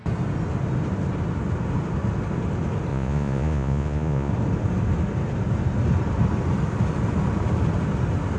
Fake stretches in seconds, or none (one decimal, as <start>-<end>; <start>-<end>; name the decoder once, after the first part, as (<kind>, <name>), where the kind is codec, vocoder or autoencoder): 2.9-4.3 (vocoder, Vocos)